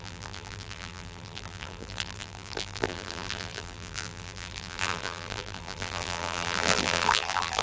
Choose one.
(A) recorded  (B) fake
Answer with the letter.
B